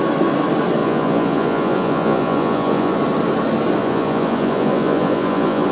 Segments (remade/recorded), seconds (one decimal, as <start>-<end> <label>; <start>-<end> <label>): 0.0-0.8 recorded; 0.8-3.0 remade; 3.0-3.8 recorded; 3.8-5.7 remade

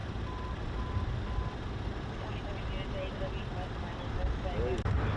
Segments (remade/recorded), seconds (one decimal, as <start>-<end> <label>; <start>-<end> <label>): 0.0-5.2 recorded

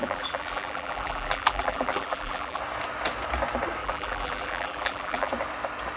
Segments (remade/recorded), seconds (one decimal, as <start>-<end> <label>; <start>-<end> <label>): 0.0-2.6 remade; 2.6-3.8 recorded; 3.8-5.3 remade; 5.3-6.0 recorded